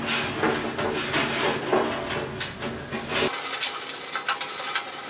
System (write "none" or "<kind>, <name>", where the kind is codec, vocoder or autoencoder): none